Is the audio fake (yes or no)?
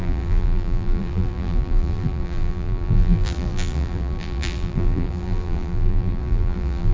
yes